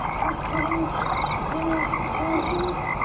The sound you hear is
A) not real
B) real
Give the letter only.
B